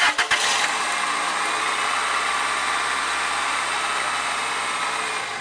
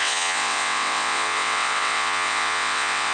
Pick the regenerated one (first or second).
second